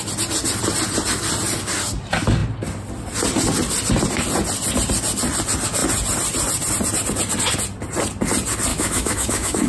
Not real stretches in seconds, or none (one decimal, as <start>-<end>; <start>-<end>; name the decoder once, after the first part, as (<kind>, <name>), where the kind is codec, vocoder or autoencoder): 8.7-9.7 (autoencoder, DAC-VAE)